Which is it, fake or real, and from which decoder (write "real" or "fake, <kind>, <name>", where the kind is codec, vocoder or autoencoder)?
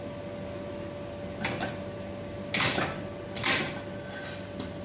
real